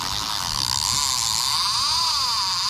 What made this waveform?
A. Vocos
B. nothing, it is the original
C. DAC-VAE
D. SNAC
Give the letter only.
B